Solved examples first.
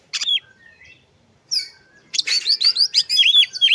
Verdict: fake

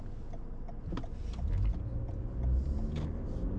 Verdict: real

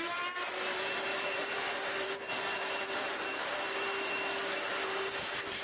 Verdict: fake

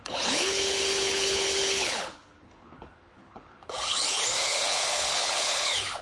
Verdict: fake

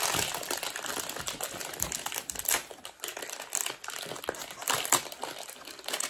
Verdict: real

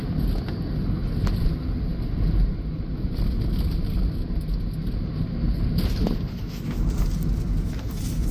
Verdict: real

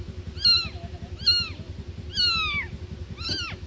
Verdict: real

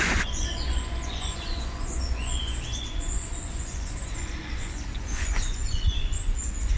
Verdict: fake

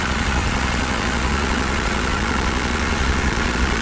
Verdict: fake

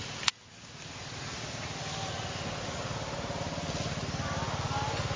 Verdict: real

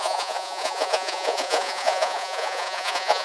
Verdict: fake